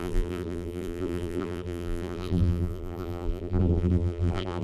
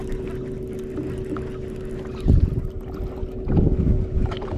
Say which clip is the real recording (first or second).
second